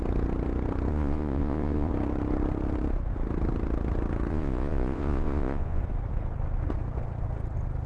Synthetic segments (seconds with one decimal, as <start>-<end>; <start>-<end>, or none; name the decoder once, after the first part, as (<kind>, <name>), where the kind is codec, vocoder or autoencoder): 0.9-1.9 (vocoder, Vocos); 4.3-5.8